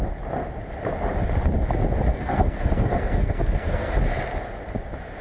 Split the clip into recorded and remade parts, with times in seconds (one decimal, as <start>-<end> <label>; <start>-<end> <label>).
0.0-2.1 recorded; 2.1-3.9 remade; 3.9-5.2 recorded